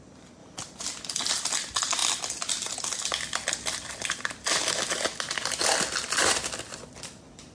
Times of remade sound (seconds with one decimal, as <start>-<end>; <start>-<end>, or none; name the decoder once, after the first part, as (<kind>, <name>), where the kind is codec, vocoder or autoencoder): 0.0-0.4 (vocoder, BigVGAN v2); 1.3-2.0; 3.5-4.6; 6.0-7.5